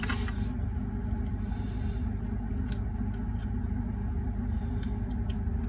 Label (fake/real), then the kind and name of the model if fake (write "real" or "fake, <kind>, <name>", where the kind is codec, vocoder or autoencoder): real